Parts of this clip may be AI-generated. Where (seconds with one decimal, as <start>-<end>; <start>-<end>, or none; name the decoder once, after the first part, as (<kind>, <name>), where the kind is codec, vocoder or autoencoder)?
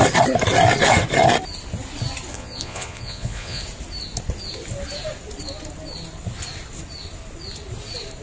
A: 2.3-3.6 (vocoder, Vocos)